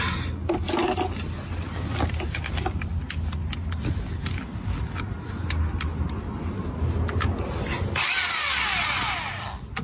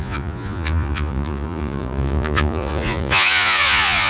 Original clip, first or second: first